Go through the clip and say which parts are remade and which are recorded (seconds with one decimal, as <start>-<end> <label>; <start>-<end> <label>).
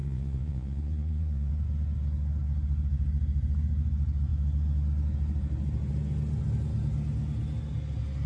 0.0-1.5 remade; 1.5-8.3 recorded